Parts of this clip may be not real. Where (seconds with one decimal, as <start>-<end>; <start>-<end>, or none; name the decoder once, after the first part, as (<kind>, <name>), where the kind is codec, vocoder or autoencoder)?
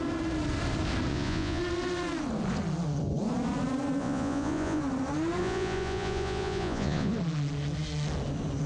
1.1-1.6 (vocoder, Vocos); 4.0-4.8; 5.4-7.1